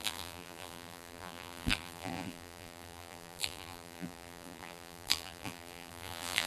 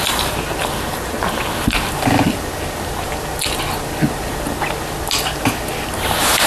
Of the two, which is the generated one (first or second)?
first